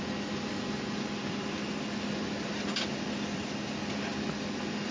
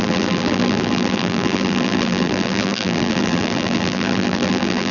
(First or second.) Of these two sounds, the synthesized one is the second